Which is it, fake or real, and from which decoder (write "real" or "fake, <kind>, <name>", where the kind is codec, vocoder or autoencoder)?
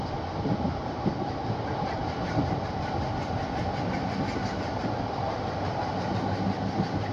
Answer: real